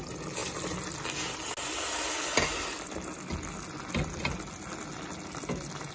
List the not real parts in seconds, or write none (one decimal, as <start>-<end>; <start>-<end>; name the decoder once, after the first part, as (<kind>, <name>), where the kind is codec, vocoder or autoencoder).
none